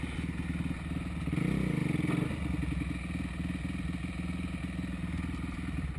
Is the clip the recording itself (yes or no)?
yes